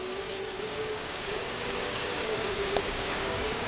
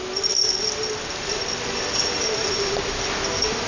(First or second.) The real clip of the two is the second